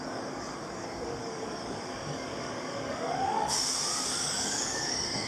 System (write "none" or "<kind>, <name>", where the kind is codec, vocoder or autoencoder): codec, DAC